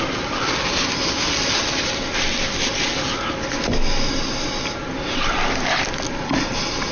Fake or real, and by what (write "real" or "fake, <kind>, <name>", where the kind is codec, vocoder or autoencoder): real